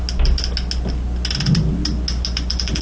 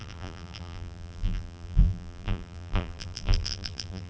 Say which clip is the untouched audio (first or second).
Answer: first